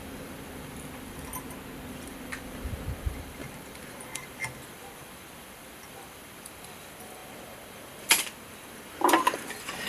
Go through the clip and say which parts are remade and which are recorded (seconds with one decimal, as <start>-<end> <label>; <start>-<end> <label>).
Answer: 0.0-1.3 remade; 1.3-1.9 recorded; 1.9-9.9 remade